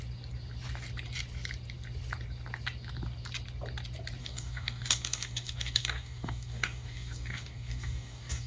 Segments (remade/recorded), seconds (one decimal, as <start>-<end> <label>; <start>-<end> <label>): 0.0-4.2 recorded; 4.2-8.5 remade